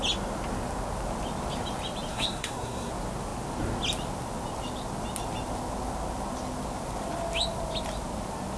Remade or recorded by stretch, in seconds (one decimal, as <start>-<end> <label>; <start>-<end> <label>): 0.0-2.1 recorded; 2.1-2.9 remade; 2.9-8.6 recorded